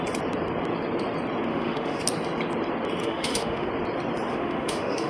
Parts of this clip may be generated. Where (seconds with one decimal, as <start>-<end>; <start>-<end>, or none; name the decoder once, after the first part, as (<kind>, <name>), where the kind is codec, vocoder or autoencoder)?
1.5-2.0 (autoencoder, DAC-VAE); 3.0-3.7; 4.3-5.1